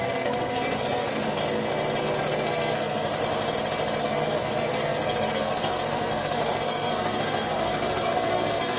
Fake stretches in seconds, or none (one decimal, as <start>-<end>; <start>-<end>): 0.0-1.4; 2.0-3.1; 4.0-8.8